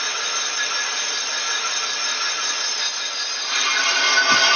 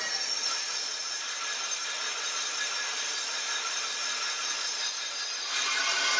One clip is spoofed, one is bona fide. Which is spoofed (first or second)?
second